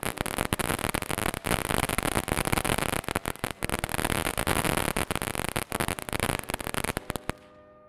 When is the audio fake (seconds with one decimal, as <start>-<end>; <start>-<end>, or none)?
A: none